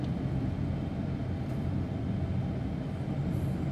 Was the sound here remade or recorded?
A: recorded